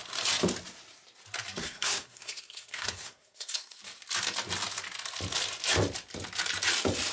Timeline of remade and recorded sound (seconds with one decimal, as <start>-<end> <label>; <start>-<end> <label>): 0.0-1.6 recorded; 1.6-3.8 remade; 3.8-7.1 recorded